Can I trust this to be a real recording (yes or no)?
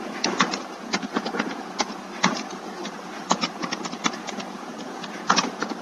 no